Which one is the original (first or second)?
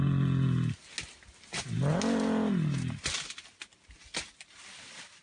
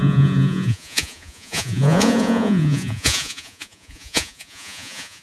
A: first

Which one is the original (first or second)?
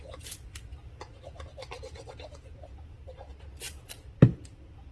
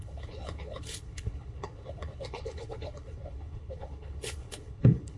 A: first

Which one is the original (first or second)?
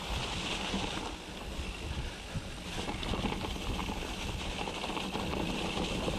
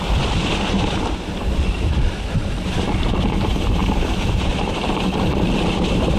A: first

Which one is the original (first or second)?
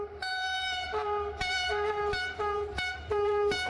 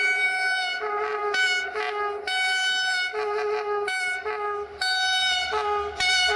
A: second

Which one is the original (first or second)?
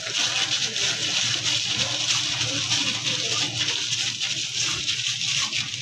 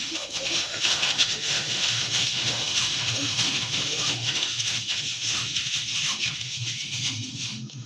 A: first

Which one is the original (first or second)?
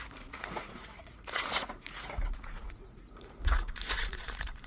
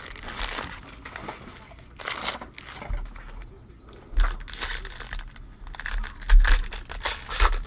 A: second